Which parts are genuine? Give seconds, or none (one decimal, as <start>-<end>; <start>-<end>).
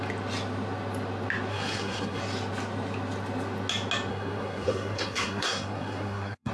0.0-1.5; 2.2-4.1